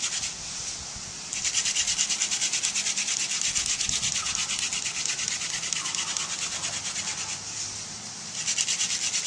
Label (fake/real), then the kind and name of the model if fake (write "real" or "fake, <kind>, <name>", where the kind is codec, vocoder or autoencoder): real